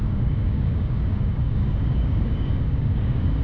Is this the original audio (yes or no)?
no